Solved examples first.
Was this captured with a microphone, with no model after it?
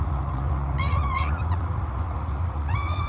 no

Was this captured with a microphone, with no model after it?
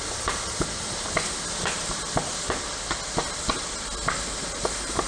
yes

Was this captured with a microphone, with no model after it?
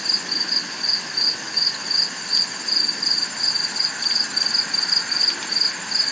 yes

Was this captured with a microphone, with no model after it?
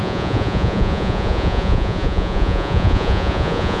no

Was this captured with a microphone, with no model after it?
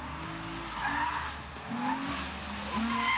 yes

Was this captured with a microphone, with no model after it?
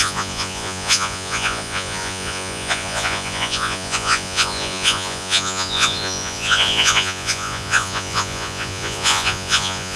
no